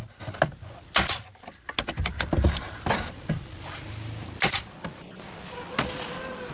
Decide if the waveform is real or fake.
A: real